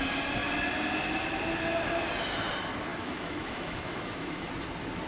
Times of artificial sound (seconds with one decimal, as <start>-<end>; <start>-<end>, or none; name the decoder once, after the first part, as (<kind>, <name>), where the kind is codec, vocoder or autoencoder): 2.9-4.5 (autoencoder, DAC-VAE)